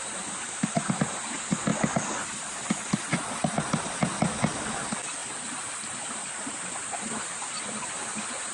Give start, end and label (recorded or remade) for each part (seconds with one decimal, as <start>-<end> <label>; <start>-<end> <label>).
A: 0.0-1.7 recorded; 1.7-4.8 remade; 4.8-5.2 recorded; 5.2-7.6 remade; 7.6-8.5 recorded